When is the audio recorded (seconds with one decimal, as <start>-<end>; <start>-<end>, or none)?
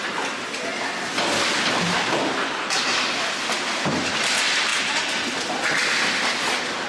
0.0-6.9